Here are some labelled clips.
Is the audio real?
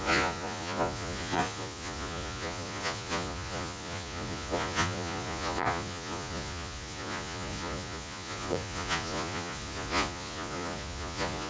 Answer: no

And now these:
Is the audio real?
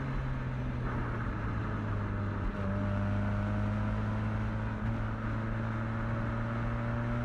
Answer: yes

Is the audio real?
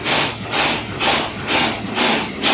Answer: yes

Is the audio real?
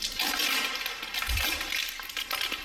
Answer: no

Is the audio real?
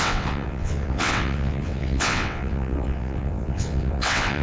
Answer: no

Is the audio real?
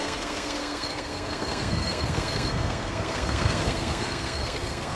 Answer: no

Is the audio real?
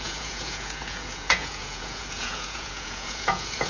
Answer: no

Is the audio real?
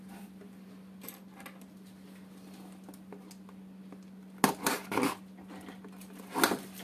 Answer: yes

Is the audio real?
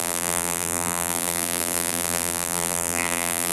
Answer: no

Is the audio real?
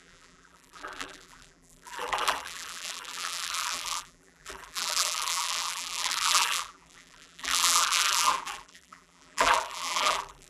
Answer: no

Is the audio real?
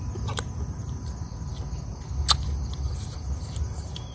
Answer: yes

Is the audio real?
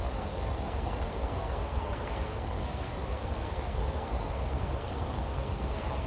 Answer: no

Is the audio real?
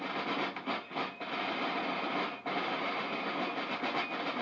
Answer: yes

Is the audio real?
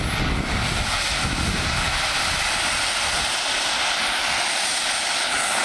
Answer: yes